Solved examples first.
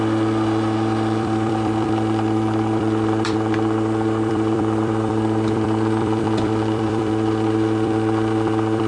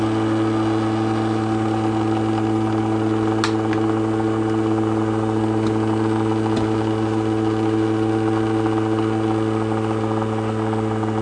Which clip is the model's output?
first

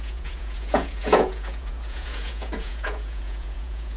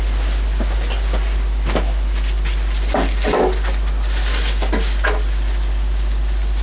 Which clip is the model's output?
first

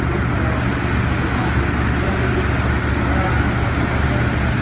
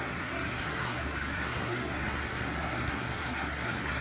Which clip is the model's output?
second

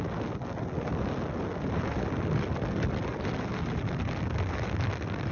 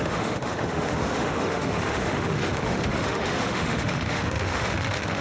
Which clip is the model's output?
second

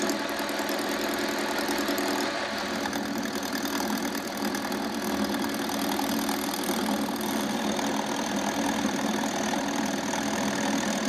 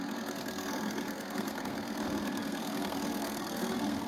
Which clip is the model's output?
second